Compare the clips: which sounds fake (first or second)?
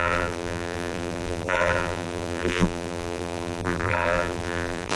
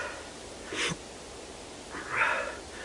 first